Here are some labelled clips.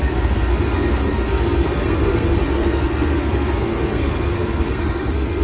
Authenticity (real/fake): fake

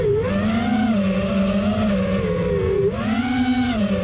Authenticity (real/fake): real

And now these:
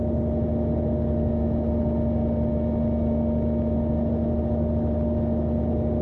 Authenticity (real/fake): real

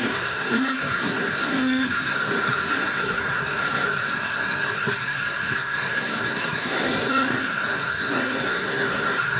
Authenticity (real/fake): fake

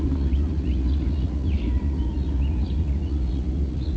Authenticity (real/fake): fake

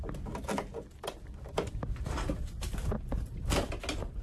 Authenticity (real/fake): real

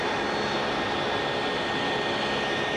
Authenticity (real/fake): real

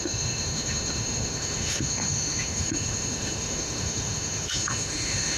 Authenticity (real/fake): fake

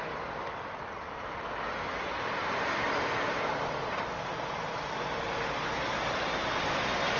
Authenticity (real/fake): real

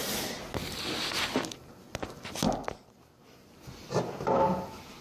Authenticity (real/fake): real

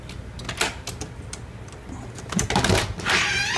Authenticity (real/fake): real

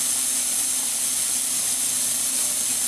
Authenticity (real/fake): real